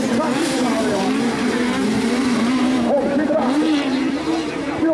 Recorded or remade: remade